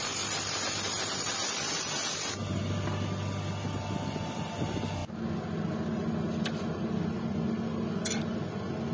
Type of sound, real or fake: real